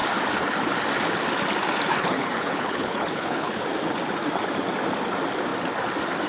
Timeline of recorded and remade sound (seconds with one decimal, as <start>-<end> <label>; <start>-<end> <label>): 0.0-1.9 recorded; 1.9-3.6 remade; 3.6-6.3 recorded